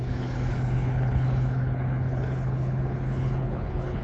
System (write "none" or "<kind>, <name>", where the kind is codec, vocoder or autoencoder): codec, HILCodec